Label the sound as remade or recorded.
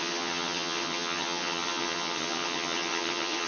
remade